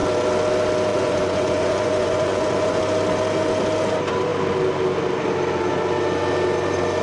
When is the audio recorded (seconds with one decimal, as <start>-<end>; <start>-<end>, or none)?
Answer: 0.0-0.9; 2.8-7.0